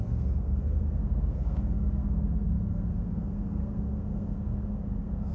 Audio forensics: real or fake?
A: fake